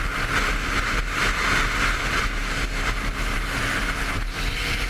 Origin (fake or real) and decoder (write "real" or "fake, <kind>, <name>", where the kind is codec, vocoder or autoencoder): real